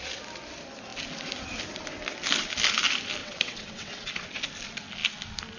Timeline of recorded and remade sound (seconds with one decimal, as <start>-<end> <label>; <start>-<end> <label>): 0.0-3.2 recorded; 3.2-4.1 remade; 4.1-5.6 recorded